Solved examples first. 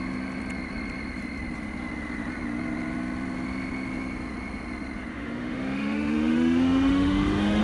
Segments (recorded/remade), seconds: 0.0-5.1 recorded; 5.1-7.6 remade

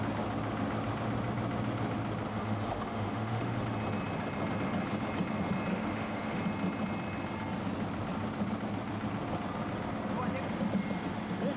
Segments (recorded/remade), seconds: 0.0-2.3 recorded; 2.3-3.6 remade; 3.6-5.7 recorded; 5.7-6.4 remade; 6.4-11.6 recorded

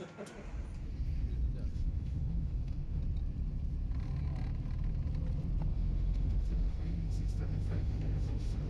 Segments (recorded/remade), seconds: 0.0-1.7 recorded; 1.7-3.0 remade; 3.0-5.7 recorded; 5.7-8.7 remade